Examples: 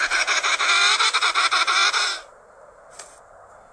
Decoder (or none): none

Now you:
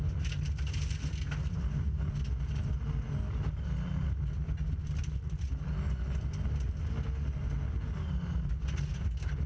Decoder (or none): none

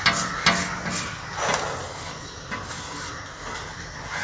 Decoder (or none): none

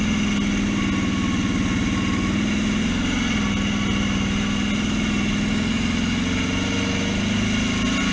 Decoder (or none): none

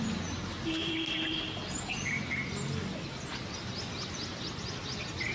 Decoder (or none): none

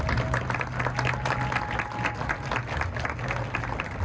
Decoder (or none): none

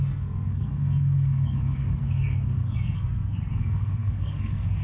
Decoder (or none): codec, SNAC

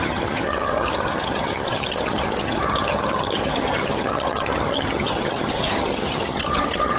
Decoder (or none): vocoder, HiFi-GAN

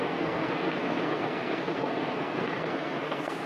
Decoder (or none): codec, SNAC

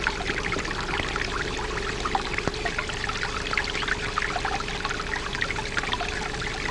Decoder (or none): none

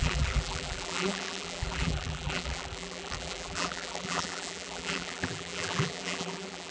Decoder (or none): vocoder, BigVGAN v2